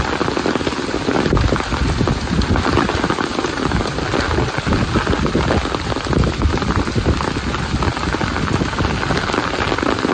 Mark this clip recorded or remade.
recorded